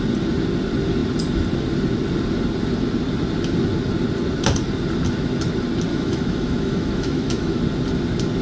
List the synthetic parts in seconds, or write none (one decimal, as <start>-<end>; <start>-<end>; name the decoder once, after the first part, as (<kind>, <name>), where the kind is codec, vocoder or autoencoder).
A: 5.9-7.6 (autoencoder, DAC-VAE)